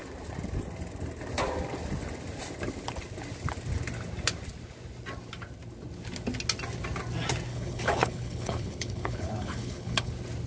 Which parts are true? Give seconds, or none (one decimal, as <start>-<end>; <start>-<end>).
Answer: 0.0-7.5; 10.1-10.5

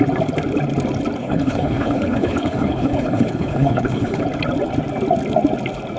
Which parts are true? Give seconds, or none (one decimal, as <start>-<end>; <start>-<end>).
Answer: 0.0-1.2; 4.2-6.0

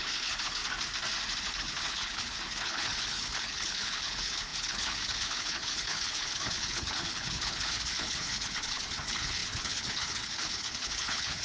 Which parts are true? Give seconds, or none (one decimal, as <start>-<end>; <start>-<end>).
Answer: 0.6-1.4

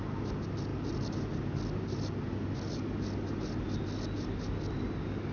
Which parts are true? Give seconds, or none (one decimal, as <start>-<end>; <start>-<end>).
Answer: 0.0-5.3

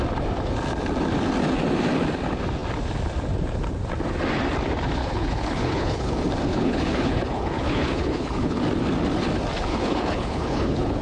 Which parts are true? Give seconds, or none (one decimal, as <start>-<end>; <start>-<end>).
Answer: 0.0-5.0; 6.1-6.5; 8.6-9.7

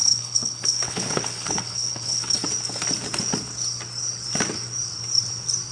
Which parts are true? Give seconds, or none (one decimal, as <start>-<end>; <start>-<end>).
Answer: 2.4-5.7

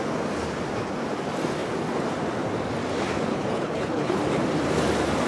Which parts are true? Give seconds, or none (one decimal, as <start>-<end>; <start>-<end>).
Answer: 0.0-3.3; 4.2-5.3

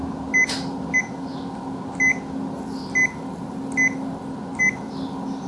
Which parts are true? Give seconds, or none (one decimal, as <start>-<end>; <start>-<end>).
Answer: 0.0-5.5